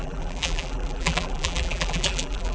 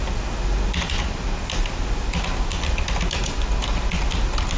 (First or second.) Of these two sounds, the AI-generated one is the first